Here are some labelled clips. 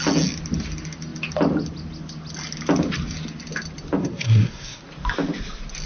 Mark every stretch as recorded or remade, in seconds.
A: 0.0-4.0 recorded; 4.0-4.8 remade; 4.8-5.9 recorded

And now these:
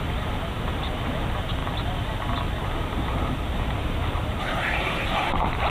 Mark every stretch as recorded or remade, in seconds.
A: 0.0-4.4 recorded; 4.4-5.3 remade; 5.3-5.7 recorded